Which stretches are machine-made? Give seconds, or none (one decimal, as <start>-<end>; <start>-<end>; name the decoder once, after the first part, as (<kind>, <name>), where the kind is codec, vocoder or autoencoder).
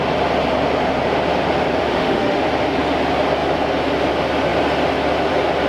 1.9-2.4 (autoencoder, DAC-VAE)